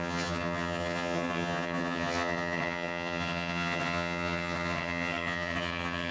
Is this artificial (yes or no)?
yes